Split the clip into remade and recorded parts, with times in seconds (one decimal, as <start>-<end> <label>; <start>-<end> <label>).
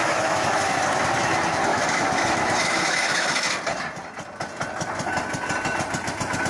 0.0-0.7 remade; 0.7-1.7 recorded; 1.7-3.5 remade; 3.5-6.5 recorded